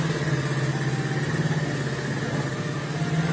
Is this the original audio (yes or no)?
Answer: yes